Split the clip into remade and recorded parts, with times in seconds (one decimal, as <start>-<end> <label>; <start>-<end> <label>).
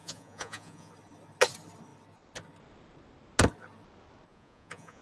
0.0-0.9 remade; 0.9-4.3 recorded; 4.3-5.0 remade